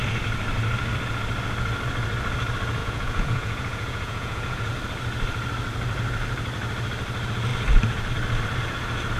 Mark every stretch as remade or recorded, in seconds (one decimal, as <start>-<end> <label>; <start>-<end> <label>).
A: 0.0-2.8 recorded; 2.8-4.7 remade; 4.7-9.2 recorded